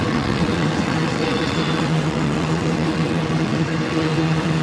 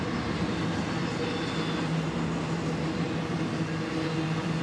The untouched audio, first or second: second